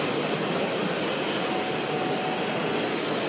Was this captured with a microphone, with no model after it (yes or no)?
yes